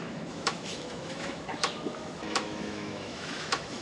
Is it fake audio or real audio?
fake